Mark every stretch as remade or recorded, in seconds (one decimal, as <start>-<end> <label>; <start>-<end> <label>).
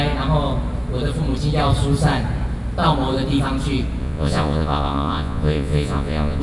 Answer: 0.0-4.0 recorded; 4.0-6.4 remade